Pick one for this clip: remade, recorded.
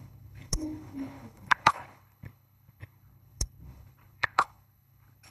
remade